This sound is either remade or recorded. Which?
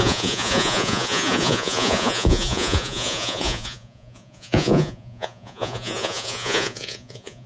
remade